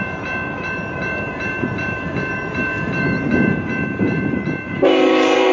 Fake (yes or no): yes